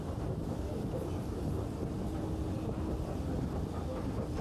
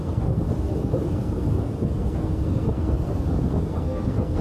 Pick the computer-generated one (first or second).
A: second